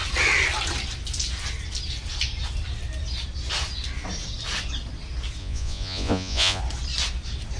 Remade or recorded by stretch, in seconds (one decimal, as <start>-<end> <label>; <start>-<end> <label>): 0.0-5.4 recorded; 5.4-6.6 remade; 6.6-7.6 recorded